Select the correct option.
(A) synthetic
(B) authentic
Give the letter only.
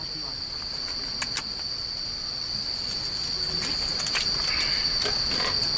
B